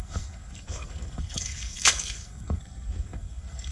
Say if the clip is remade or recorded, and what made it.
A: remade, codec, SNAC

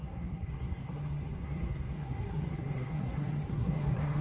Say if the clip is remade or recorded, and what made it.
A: remade, codec, SNAC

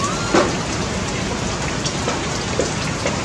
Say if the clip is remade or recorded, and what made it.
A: recorded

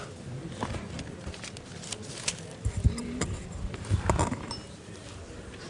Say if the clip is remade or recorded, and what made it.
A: recorded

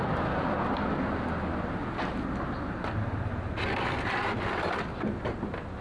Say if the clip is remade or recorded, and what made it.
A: recorded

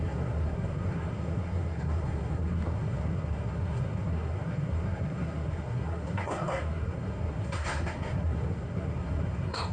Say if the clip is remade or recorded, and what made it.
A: remade, codec, SNAC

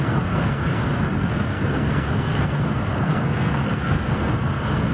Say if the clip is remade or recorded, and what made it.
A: remade, codec, SNAC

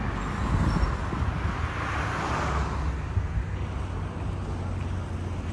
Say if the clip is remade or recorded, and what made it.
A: recorded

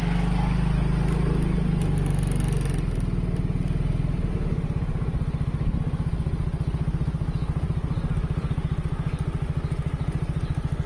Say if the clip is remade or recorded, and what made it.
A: recorded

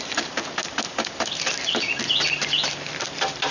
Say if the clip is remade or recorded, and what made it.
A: recorded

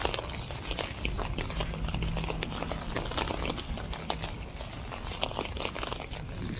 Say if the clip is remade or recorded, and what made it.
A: recorded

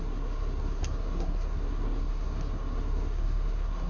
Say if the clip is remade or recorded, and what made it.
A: remade, codec, SNAC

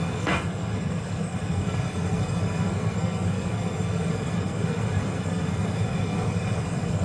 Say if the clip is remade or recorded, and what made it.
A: remade, codec, SNAC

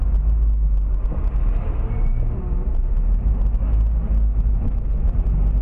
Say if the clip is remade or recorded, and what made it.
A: recorded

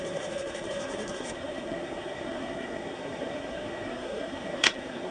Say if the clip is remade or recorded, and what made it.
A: remade, codec, SNAC